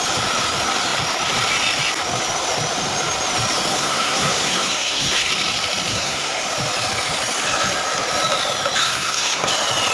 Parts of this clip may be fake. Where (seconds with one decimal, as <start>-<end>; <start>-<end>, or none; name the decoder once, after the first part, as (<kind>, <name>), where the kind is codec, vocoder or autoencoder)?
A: 3.7-5.3 (codec, SNAC); 5.9-6.4; 8.8-9.5